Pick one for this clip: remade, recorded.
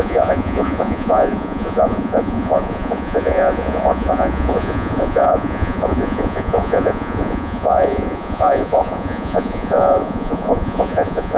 remade